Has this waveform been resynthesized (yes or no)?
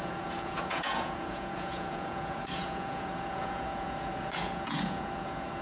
yes